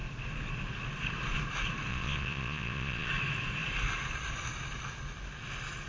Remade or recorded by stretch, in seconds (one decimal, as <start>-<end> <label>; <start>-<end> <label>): 0.0-1.9 recorded; 1.9-3.1 remade; 3.1-5.9 recorded